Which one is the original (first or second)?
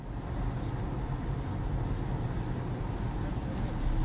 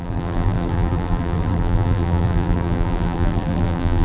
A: first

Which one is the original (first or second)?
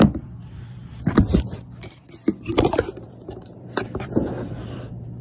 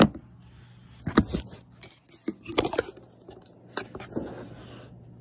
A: second